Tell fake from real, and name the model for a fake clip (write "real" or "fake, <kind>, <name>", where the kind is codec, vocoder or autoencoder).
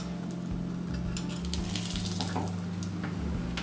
real